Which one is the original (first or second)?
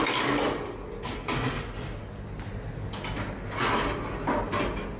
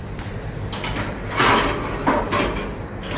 first